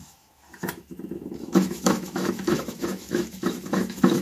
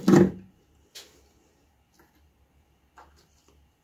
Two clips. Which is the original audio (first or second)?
second